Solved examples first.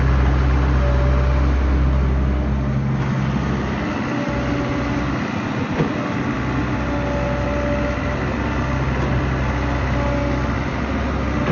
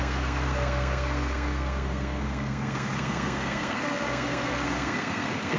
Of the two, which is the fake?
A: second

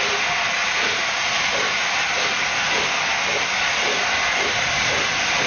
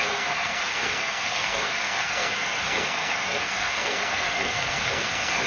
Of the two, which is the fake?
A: second